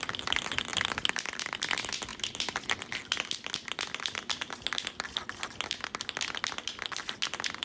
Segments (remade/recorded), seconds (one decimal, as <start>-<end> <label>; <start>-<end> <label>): 0.0-7.6 recorded

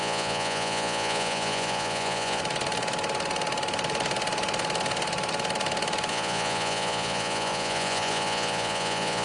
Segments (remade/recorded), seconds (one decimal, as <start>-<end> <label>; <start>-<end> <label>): 0.0-2.4 remade; 2.4-6.1 recorded; 6.1-9.2 remade

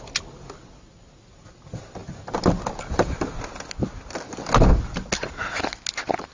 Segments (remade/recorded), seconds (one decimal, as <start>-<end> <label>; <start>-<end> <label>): 0.0-6.3 recorded

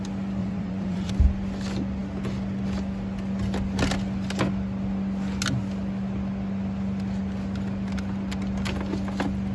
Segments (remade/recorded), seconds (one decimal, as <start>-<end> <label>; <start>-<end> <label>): 0.0-0.4 recorded; 0.4-1.1 remade; 1.1-9.5 recorded

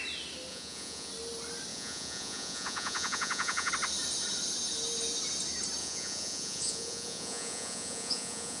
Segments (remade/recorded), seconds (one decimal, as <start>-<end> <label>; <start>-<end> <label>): 0.0-0.5 recorded; 0.5-1.1 remade; 1.1-1.7 recorded; 1.7-3.7 remade; 3.7-5.8 recorded; 5.8-8.6 remade

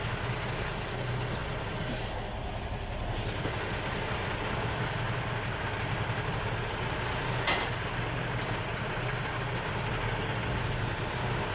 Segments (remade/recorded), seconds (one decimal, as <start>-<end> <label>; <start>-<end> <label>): 0.0-11.5 recorded

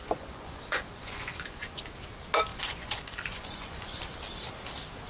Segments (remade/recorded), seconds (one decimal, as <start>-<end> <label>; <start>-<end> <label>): 0.0-1.8 remade; 1.8-2.5 recorded; 2.5-4.0 remade; 4.0-5.1 recorded